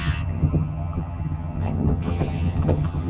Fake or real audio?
fake